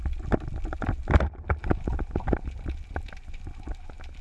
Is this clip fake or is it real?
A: real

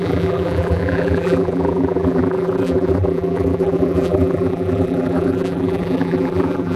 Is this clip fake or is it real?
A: fake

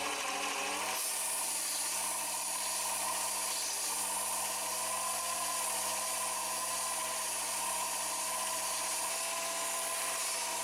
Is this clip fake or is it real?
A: real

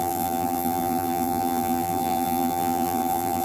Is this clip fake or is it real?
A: fake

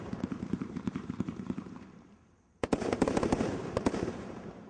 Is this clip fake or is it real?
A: fake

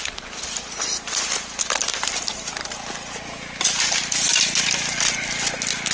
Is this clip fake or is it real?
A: real